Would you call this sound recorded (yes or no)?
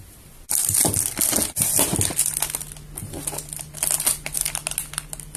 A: yes